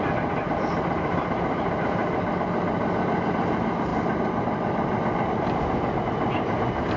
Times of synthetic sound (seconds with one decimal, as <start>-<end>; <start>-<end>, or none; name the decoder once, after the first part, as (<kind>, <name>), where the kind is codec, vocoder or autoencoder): 0.0-7.0 (vocoder, BigVGAN v2)